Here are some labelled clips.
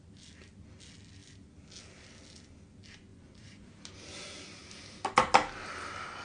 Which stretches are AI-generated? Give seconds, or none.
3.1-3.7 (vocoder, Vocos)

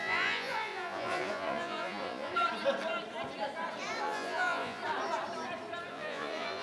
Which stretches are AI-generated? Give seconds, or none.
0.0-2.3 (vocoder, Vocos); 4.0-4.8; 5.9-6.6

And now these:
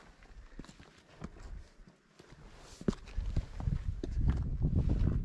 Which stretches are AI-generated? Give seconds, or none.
none

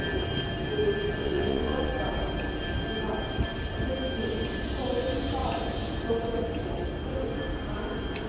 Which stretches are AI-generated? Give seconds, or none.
1.2-1.9 (vocoder, Vocos)

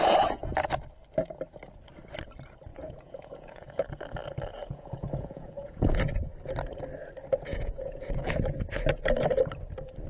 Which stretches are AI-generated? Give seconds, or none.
2.7-3.9 (vocoder, Vocos); 4.5-6.0; 7.5-8.3

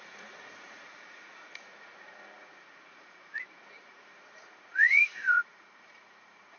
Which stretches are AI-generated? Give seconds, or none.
0.0-6.6 (vocoder, Vocos)

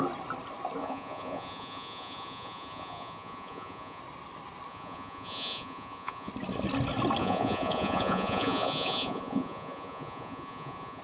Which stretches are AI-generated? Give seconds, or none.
0.8-4.0 (vocoder, Vocos); 4.7-6.3; 7.2-11.0